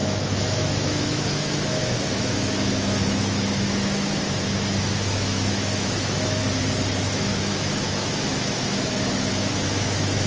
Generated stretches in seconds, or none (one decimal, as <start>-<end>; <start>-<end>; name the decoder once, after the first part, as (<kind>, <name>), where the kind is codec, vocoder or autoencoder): 0.0-6.4 (autoencoder, DAC-VAE); 7.0-10.3

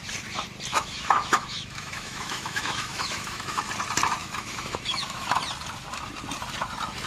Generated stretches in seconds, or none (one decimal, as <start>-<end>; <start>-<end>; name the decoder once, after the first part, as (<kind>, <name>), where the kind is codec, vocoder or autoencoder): 0.7-3.6 (autoencoder, DAC-VAE); 4.2-5.4

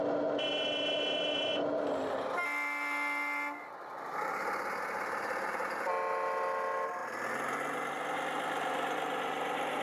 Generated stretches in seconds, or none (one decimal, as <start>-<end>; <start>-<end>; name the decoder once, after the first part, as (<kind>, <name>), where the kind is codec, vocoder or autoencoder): none